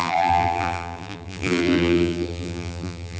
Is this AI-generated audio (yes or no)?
yes